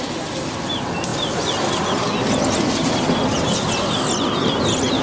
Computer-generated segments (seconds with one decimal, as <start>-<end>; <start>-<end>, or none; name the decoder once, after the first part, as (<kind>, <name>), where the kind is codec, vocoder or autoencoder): none